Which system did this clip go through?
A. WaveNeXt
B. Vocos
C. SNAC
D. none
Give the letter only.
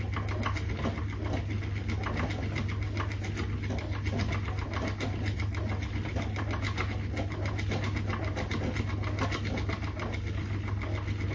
D